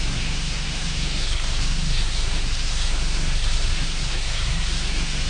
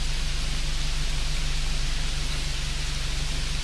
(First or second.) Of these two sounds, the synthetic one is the first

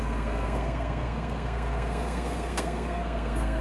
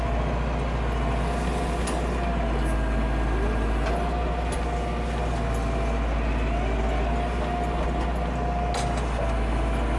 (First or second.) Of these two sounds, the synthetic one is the first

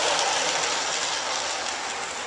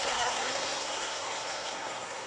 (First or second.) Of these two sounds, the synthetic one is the second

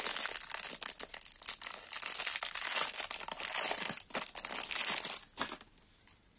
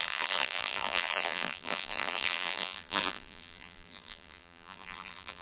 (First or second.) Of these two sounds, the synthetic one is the second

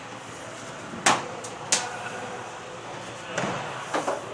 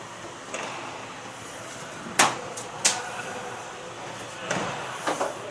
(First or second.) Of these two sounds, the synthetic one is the second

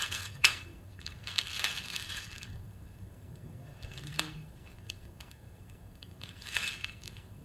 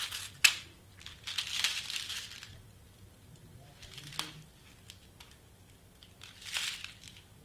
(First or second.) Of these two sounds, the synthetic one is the first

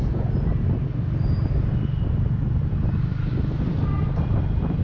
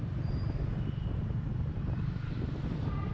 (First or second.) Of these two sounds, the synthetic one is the second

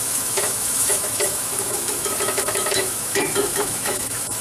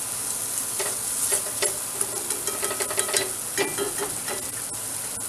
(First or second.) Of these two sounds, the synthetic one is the first